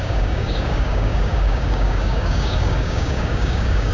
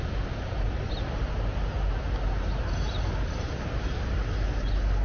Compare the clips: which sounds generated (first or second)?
first